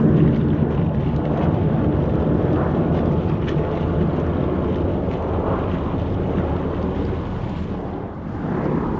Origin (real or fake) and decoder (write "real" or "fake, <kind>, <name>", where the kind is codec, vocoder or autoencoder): real